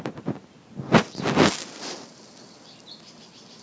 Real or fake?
real